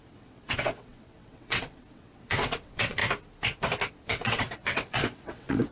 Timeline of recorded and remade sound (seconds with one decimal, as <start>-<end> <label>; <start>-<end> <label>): 0.0-3.0 remade; 3.0-3.9 recorded; 3.9-5.7 remade